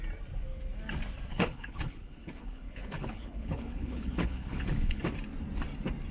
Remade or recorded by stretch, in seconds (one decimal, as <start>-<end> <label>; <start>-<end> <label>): 0.0-1.3 recorded; 1.3-5.0 remade; 5.0-6.1 recorded